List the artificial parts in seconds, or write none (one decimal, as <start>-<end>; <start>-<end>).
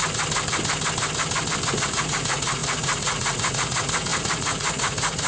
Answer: 1.7-5.3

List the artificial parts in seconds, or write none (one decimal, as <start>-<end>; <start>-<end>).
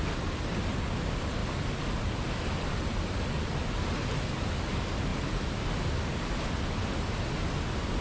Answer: none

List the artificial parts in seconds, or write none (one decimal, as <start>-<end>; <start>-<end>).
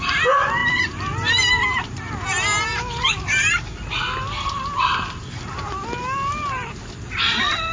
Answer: none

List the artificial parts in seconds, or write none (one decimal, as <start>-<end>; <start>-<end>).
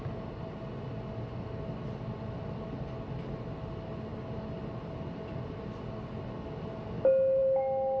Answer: none